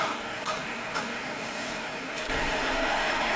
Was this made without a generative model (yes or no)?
no